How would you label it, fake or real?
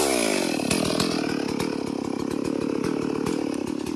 real